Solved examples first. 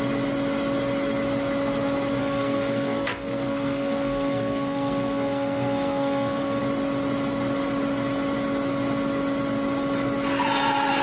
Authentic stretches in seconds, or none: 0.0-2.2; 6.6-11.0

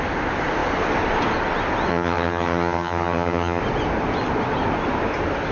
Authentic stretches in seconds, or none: 0.0-1.9; 3.6-5.5